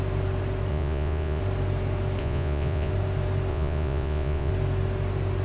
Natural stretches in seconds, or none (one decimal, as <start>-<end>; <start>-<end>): 0.0-0.7; 1.4-2.2; 2.9-3.5; 4.5-5.4